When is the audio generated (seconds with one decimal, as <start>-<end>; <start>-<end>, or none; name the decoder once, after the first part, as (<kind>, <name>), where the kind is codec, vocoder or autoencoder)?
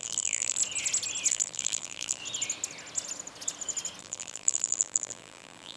0.0-0.6 (vocoder, BigVGAN v2); 1.3-2.2; 4.0-5.8